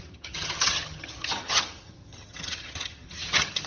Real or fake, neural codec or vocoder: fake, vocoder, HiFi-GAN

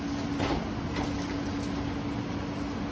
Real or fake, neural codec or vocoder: real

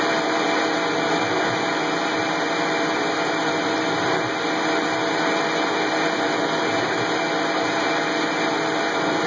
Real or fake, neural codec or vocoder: real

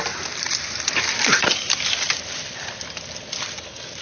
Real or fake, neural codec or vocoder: real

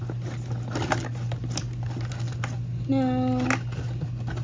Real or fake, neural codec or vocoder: real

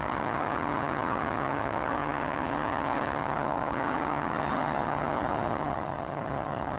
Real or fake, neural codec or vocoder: fake, vocoder, HiFi-GAN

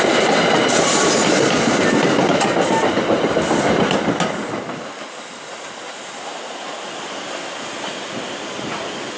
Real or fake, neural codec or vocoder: real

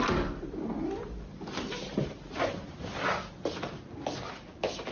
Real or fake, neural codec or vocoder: real